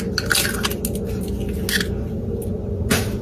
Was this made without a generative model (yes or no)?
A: yes